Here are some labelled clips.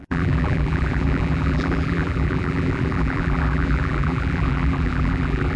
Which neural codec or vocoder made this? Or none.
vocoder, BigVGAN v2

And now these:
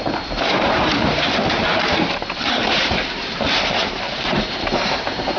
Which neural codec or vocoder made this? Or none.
vocoder, BigVGAN v2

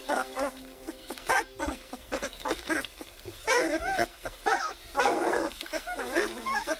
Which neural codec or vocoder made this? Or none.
codec, SNAC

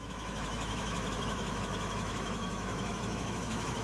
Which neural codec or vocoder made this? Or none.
autoencoder, DAC-VAE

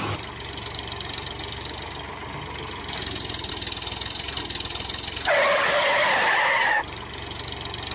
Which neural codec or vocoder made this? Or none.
none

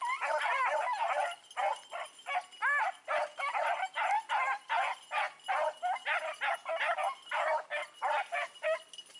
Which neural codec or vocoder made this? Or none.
none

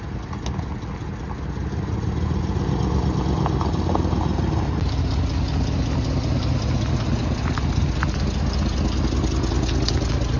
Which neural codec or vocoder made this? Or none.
none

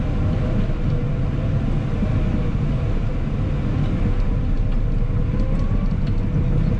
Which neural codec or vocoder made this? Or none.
none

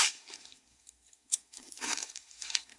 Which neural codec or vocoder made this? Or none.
codec, SNAC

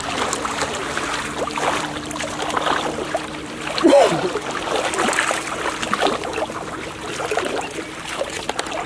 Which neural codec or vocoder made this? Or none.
none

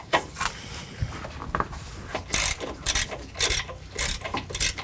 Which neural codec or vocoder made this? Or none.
none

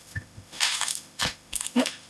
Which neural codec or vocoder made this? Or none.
autoencoder, DAC-VAE